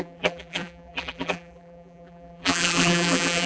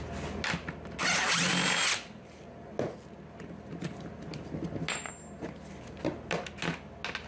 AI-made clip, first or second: first